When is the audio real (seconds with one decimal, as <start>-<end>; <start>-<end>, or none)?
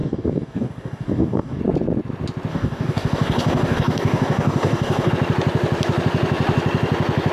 1.6-2.5; 5.1-7.3